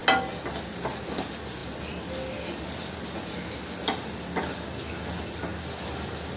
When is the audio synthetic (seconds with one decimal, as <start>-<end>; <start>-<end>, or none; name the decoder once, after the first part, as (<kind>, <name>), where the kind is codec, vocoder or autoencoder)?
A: none